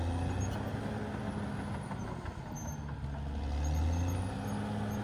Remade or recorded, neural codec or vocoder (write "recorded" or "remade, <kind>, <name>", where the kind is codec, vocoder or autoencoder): recorded